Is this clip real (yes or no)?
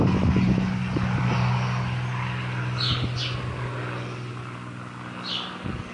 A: yes